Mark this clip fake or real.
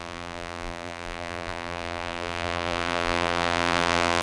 fake